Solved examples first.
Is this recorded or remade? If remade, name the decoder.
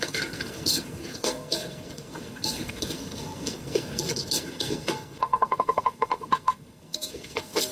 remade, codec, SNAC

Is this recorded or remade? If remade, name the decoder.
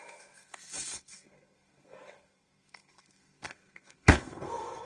remade, codec, SNAC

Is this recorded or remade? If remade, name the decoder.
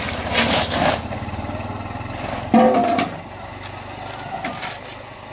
recorded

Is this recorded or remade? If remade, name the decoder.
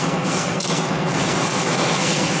remade, codec, SNAC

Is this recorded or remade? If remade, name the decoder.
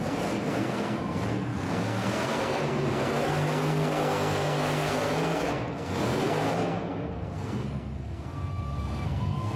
remade, codec, SNAC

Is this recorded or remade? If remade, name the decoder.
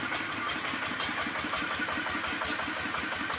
recorded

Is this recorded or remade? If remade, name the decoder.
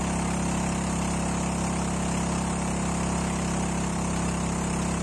recorded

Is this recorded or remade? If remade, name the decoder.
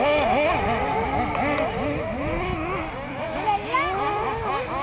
recorded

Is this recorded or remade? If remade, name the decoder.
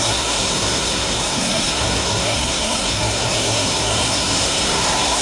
remade, codec, SNAC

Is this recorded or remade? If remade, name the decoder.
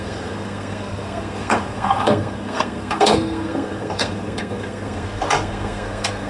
remade, codec, SNAC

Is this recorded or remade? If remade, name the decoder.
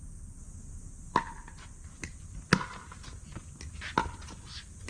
recorded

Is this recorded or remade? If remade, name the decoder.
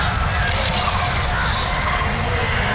recorded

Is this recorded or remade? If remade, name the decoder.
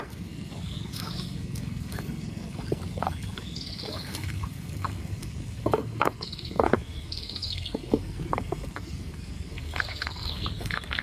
remade, codec, SNAC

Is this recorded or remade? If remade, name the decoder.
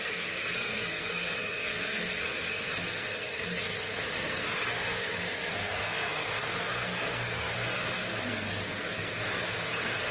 remade, codec, SNAC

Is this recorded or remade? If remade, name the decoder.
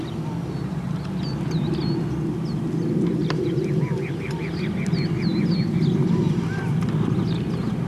recorded